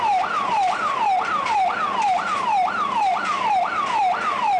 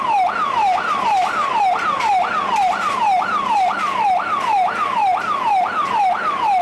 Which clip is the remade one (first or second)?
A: first